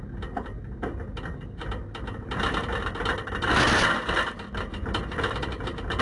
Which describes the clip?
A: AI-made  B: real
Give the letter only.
B